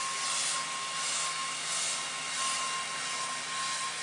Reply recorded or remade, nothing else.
recorded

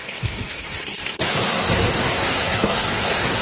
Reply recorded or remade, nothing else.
remade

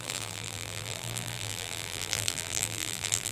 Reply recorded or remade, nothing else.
remade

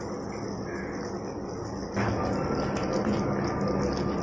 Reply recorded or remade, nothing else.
recorded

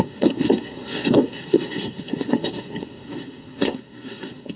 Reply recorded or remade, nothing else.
remade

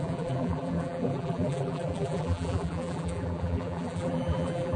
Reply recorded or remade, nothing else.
remade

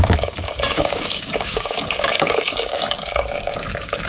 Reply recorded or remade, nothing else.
remade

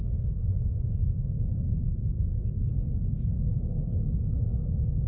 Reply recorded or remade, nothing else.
recorded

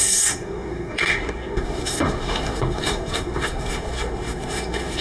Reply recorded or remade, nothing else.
remade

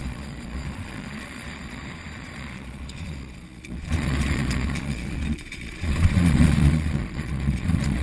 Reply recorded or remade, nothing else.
remade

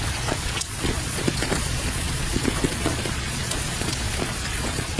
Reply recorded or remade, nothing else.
remade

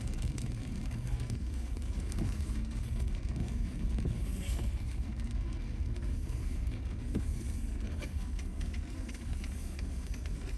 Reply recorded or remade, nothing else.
remade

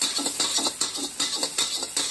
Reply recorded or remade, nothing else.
recorded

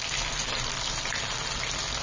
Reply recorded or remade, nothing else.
recorded